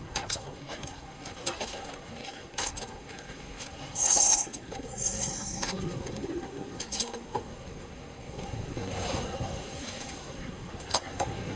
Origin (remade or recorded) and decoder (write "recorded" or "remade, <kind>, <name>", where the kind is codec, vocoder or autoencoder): remade, codec, SNAC